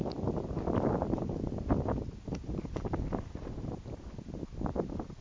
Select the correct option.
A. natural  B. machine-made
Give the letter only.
A